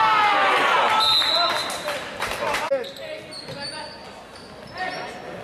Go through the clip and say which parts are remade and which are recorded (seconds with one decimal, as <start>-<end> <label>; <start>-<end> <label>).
0.0-1.6 recorded; 1.6-2.6 remade; 2.6-4.0 recorded; 4.0-4.9 remade; 4.9-5.4 recorded